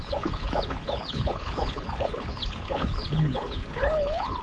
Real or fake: fake